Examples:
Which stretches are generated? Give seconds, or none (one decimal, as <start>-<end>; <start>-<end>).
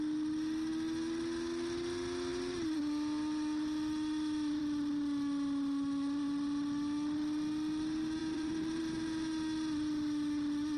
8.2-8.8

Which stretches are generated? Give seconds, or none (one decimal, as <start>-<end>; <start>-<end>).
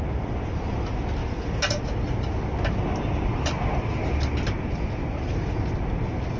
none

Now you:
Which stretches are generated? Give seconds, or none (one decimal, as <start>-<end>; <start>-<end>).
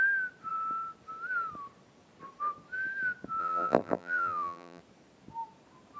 3.4-4.8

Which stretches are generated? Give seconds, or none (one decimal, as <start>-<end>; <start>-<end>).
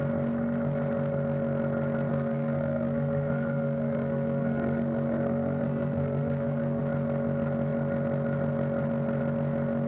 2.1-6.8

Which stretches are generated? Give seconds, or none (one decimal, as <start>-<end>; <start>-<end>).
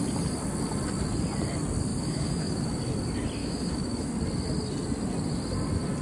1.9-2.8; 3.4-4.1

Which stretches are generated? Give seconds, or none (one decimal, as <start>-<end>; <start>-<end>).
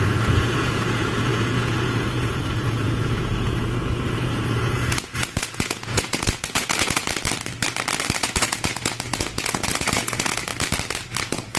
0.0-7.0; 8.2-10.5; 11.2-11.6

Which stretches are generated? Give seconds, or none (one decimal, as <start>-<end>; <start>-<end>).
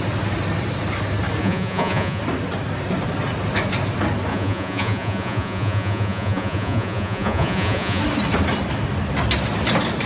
1.4-2.2; 4.3-8.0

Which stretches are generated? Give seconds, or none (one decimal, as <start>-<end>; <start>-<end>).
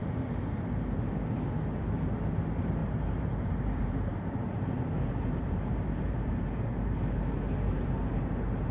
1.8-8.7